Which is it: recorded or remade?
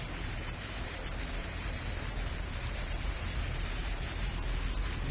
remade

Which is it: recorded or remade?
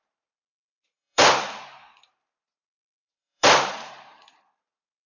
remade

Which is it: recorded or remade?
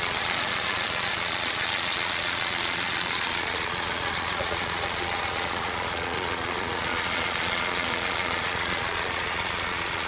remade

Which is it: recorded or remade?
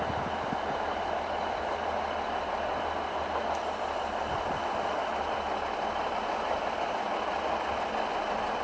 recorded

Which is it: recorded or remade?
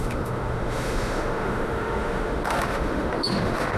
remade